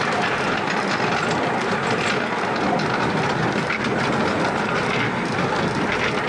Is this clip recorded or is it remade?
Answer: recorded